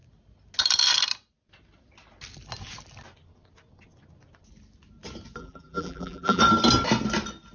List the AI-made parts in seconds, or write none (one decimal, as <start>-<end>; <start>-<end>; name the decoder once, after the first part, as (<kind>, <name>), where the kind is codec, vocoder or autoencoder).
5.4-6.4 (vocoder, BigVGAN v2)